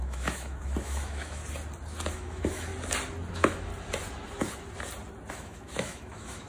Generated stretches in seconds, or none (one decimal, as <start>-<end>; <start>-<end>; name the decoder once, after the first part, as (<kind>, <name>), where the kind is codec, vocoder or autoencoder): 0.0-1.4 (autoencoder, DAC-VAE); 2.1-2.7; 3.3-3.7; 5.3-6.5